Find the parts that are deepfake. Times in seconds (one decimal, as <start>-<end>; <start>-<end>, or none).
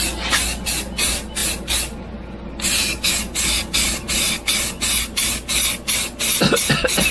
none